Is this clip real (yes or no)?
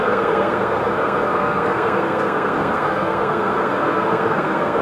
no